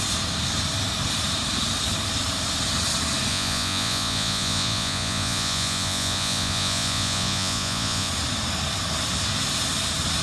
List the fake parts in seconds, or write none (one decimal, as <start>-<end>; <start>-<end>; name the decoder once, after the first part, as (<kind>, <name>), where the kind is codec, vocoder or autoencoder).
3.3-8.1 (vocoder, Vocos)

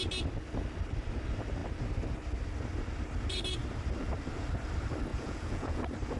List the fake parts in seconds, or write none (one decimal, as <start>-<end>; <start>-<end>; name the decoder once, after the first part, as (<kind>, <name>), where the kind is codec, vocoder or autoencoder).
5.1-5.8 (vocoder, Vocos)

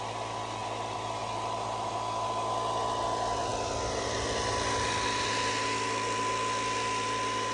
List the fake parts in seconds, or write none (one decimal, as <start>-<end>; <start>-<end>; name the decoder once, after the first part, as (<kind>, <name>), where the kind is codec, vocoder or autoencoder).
none

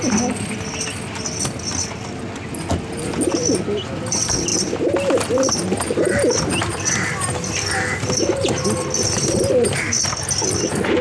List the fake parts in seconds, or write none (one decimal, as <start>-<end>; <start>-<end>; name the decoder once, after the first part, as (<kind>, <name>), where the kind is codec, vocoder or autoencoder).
none

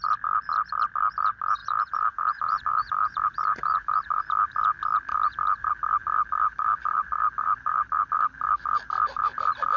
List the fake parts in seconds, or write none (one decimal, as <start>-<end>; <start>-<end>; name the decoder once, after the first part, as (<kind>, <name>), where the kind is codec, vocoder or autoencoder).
1.6-4.2 (vocoder, BigVGAN v2); 5.1-5.7; 6.5-8.1